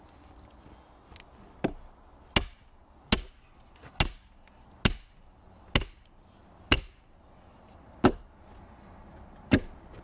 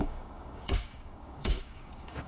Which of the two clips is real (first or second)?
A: first